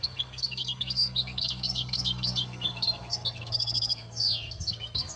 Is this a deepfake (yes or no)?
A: yes